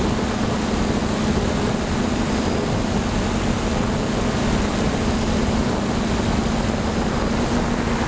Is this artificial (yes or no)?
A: no